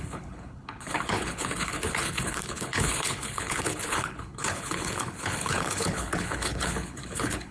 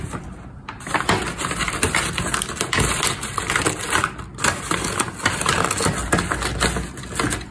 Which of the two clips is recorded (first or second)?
second